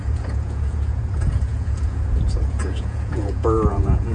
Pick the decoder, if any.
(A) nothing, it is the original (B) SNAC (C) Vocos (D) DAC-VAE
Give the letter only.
C